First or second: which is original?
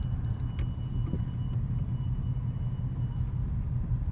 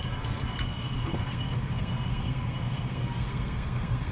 first